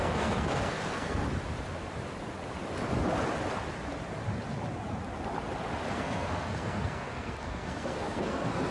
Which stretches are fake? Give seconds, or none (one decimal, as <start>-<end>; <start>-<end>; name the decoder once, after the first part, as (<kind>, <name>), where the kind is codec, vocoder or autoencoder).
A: 0.0-1.2 (codec, SNAC); 5.9-8.7